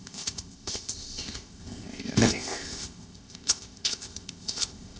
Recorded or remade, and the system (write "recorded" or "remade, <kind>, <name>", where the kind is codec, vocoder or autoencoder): remade, codec, ZipCodec